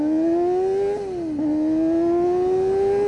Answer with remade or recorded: recorded